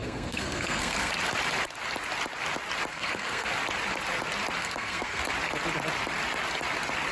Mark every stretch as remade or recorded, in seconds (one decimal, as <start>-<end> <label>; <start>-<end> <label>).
0.0-1.1 remade; 1.1-2.9 recorded; 2.9-3.5 remade; 3.5-4.6 recorded; 4.6-5.2 remade; 5.2-7.1 recorded